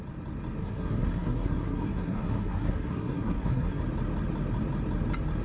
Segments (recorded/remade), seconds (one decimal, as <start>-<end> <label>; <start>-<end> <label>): 0.0-0.6 recorded; 0.6-3.8 remade; 3.8-5.4 recorded